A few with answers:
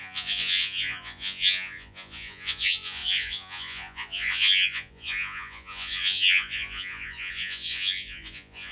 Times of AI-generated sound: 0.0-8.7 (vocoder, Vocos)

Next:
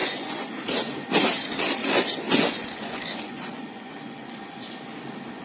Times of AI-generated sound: 0.0-0.5 (vocoder, Vocos); 1.8-5.0

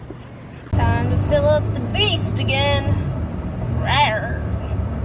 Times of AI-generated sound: none